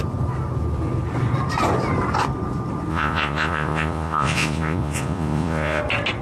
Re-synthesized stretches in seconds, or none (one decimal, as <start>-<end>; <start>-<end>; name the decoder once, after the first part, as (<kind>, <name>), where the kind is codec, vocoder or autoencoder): 2.9-5.8 (vocoder, Vocos)